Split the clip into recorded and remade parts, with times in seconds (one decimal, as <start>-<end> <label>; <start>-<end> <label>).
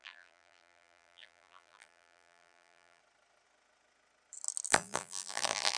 0.0-3.0 remade; 3.0-4.7 recorded; 4.7-5.8 remade